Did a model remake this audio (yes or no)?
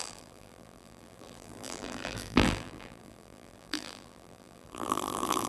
yes